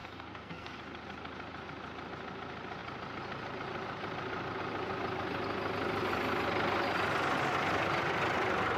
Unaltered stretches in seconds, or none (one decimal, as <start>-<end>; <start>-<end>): 0.8-8.8